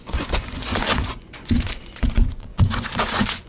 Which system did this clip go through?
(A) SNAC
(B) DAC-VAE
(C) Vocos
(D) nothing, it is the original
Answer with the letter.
C